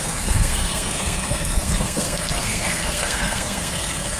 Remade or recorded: remade